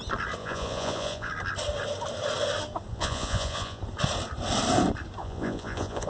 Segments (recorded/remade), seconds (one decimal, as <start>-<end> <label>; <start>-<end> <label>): 0.0-0.4 recorded; 0.4-1.3 remade; 1.3-2.9 recorded; 2.9-3.8 remade; 3.8-5.2 recorded; 5.2-6.1 remade